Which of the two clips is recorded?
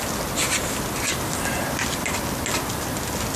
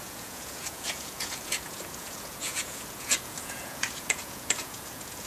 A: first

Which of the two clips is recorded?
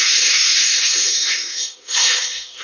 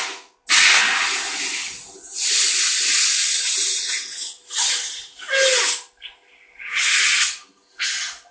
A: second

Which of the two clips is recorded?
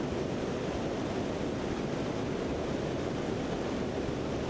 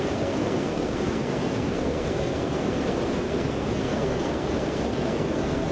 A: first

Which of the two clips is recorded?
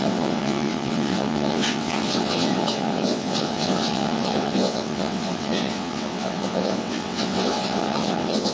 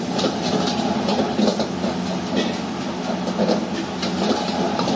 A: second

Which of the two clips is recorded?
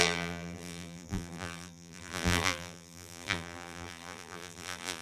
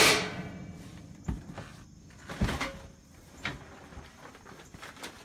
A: second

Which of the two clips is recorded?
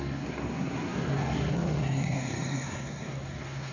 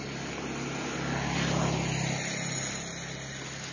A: second